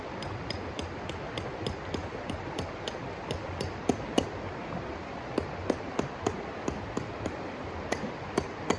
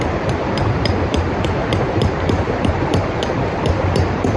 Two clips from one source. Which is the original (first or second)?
first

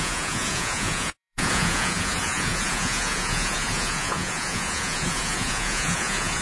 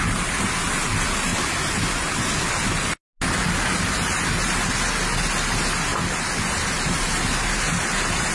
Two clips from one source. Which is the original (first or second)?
second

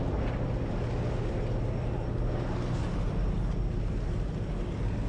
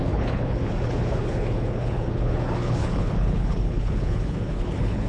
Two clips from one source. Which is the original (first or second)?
first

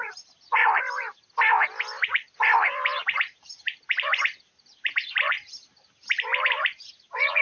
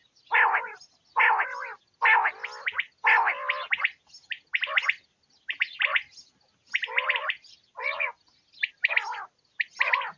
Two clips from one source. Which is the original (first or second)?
second